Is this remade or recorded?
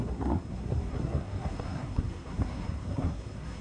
remade